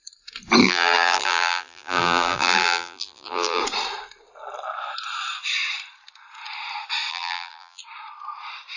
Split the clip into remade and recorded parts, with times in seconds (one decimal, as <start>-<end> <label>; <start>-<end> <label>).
0.0-0.6 recorded; 0.6-3.6 remade; 3.6-7.1 recorded; 7.1-7.8 remade; 7.8-8.8 recorded